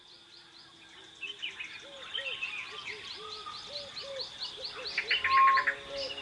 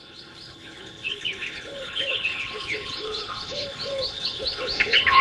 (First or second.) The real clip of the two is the first